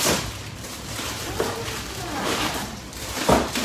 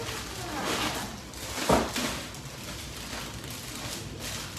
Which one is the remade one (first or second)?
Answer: first